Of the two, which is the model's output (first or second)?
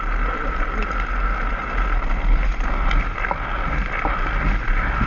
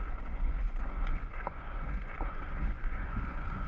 second